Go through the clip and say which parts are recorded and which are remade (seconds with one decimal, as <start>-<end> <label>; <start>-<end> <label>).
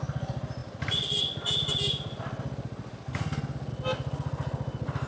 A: 0.0-5.1 recorded